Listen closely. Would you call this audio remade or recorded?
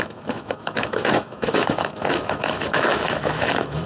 remade